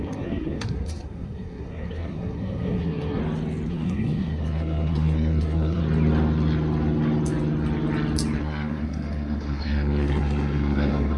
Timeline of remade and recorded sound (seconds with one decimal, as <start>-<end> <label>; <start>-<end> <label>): 0.0-3.2 remade; 3.2-3.7 recorded; 3.7-5.8 remade; 5.8-8.4 recorded; 8.4-11.2 remade